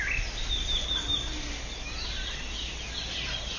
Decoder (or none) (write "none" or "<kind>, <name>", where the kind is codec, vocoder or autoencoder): none